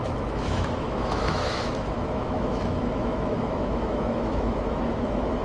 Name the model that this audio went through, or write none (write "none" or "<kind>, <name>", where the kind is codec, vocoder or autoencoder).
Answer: autoencoder, DAC-VAE